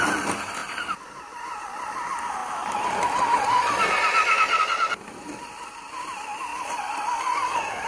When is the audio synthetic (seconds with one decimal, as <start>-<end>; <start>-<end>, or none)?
0.6-1.6; 2.4-4.6